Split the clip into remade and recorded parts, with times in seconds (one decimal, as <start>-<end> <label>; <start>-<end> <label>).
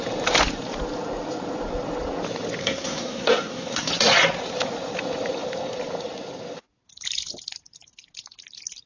0.0-2.6 recorded; 2.6-3.9 remade; 3.9-8.9 recorded